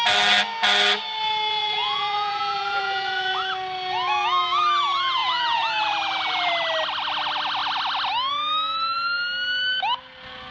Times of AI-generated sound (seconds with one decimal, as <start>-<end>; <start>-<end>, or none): 1.5-3.4; 5.2-6.5